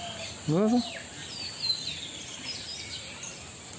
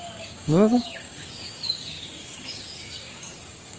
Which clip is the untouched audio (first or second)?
first